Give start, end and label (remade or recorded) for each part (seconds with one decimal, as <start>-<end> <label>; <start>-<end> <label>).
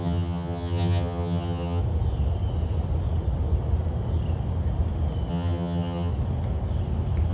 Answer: 0.0-1.8 remade; 1.8-5.3 recorded; 5.3-6.1 remade; 6.1-7.3 recorded